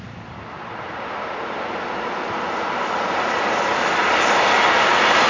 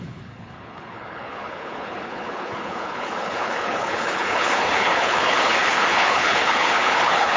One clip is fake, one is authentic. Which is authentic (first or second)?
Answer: first